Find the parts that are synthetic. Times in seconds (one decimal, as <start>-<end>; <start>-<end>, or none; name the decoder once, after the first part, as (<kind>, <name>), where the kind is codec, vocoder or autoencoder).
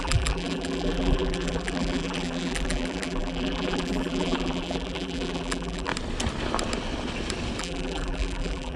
0.0-5.9 (vocoder, BigVGAN v2); 7.6-8.8